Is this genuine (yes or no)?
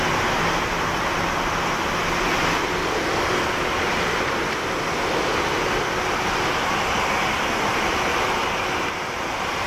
yes